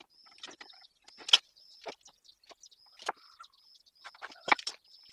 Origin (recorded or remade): recorded